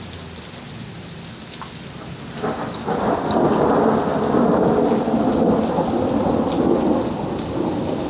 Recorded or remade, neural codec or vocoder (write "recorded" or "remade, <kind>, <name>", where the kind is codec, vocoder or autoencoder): recorded